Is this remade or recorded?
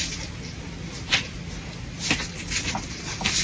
recorded